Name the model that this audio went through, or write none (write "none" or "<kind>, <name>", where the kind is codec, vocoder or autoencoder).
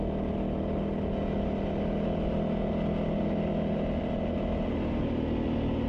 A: none